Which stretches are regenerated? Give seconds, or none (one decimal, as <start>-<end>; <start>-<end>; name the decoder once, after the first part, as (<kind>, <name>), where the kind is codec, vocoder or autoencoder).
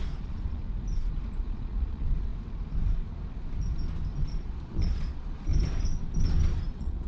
0.0-0.6 (vocoder, Vocos); 1.1-2.3; 4.3-5.5; 6.6-7.1